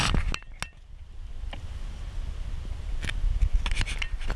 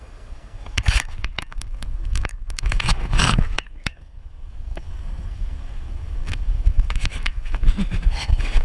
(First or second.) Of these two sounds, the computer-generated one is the second